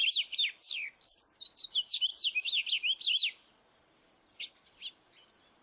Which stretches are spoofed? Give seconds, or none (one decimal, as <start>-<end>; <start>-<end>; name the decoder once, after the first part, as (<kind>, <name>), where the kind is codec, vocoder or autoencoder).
none

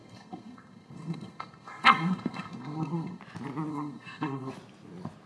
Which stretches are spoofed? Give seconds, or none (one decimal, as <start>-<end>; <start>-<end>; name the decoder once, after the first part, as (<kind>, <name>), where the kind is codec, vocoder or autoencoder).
0.0-3.2 (codec, SNAC); 3.7-4.5

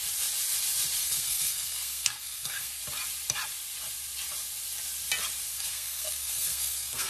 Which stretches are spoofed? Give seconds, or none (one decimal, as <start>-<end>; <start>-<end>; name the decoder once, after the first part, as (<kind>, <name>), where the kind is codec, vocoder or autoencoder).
1.0-2.8 (codec, SNAC); 5.5-7.1

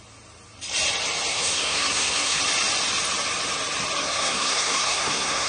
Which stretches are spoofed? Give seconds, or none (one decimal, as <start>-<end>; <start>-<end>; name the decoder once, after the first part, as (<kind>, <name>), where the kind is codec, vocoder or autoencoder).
1.3-2.4 (codec, SNAC); 4.0-5.5